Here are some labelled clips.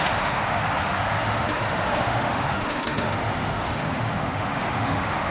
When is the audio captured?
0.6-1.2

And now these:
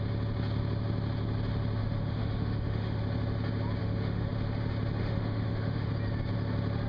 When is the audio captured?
0.0-1.8; 3.0-3.8; 4.3-5.0; 5.9-6.9

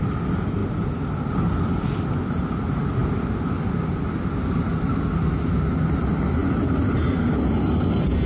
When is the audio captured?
0.0-8.3